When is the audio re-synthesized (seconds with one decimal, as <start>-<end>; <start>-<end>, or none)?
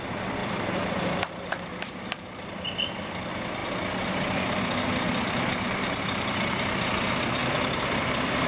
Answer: 0.4-2.6